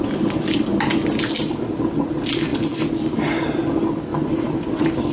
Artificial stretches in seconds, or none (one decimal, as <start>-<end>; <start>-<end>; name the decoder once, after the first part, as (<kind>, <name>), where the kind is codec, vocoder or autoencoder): 0.7-1.3 (vocoder, BigVGAN v2); 2.5-3.4; 4.1-5.1